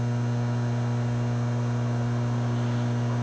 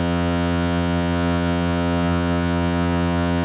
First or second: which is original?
first